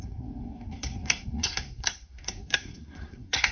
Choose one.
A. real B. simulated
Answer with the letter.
B